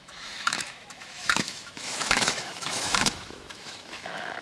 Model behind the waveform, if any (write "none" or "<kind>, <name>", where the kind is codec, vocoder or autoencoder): autoencoder, DAC-VAE